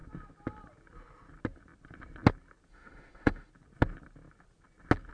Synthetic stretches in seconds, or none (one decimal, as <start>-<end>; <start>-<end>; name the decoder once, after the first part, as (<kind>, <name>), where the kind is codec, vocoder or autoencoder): 2.7-3.5 (autoencoder, DAC-VAE)